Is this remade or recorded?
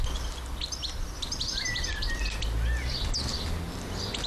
recorded